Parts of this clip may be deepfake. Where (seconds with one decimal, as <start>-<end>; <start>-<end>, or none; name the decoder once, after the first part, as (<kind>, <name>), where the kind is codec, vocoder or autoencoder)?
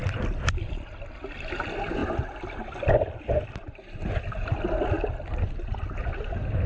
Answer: none